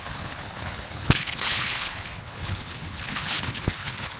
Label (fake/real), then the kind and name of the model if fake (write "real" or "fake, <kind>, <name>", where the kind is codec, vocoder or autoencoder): fake, codec, HILCodec